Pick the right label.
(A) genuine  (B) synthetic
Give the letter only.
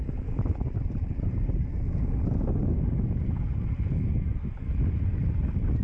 A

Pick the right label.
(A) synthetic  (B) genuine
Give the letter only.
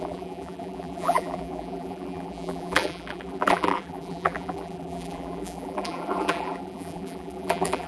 A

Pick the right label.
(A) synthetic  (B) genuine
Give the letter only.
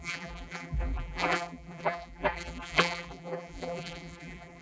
A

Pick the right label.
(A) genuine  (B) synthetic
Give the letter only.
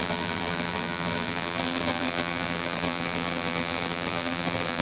B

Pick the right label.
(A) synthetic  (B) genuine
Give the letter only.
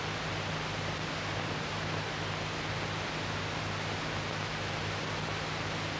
B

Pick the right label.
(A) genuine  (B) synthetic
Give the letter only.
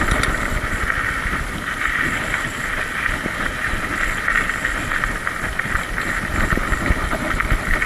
A